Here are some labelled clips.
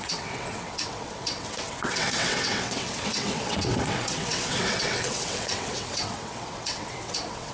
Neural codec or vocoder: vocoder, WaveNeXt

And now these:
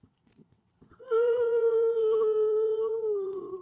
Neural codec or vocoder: vocoder, WaveNeXt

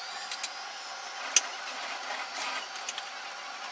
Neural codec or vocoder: none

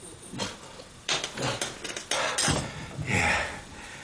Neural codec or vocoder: none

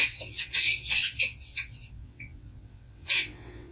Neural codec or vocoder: vocoder, WaveNeXt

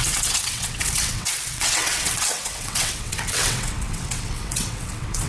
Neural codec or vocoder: vocoder, WaveNeXt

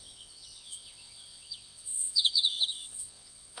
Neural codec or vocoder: vocoder, WaveNeXt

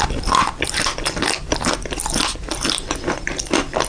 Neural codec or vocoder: none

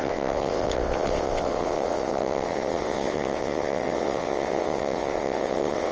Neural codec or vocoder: vocoder, WaveNeXt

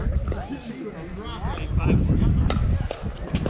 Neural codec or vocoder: none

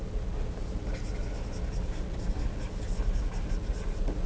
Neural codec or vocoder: none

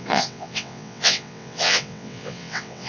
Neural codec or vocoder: vocoder, WaveNeXt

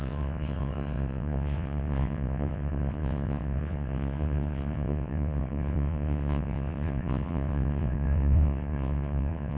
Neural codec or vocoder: vocoder, WaveNeXt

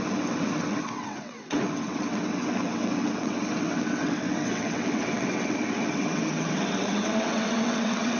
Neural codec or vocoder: vocoder, WaveNeXt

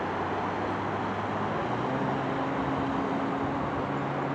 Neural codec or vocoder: none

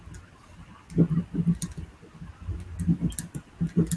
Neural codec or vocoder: none